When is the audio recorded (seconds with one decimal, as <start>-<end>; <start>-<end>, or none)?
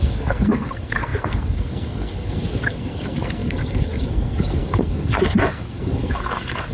none